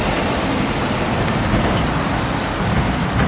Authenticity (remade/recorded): remade